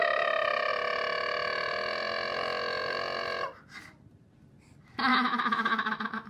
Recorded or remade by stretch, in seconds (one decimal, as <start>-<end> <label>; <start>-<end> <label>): 0.0-5.1 recorded; 5.1-6.3 remade